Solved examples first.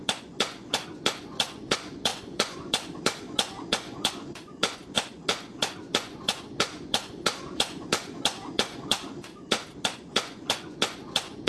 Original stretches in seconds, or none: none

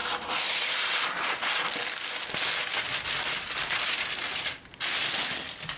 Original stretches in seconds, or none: 0.0-5.8